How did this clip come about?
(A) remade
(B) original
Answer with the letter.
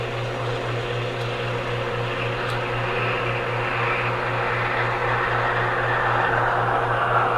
B